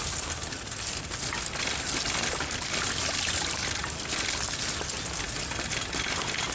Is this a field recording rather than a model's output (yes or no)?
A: yes